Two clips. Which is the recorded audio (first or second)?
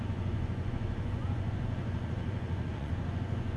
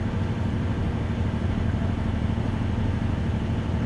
second